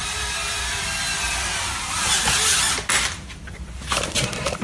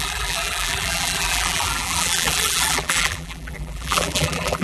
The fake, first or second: second